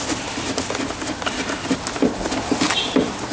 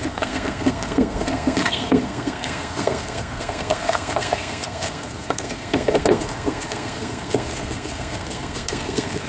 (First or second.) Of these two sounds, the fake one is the second